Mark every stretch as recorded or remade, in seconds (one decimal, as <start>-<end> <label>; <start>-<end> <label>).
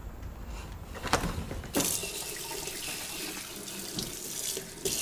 0.0-5.0 recorded